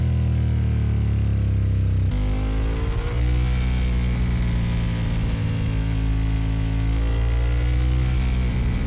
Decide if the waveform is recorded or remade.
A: recorded